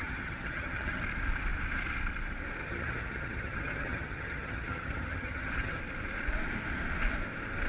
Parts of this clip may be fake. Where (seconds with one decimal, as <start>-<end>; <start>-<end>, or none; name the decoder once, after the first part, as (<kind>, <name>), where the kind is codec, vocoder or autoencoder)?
0.0-1.0 (vocoder, HiFi-GAN); 2.6-5.8